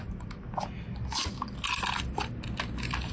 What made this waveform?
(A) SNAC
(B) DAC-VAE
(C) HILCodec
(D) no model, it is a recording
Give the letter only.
D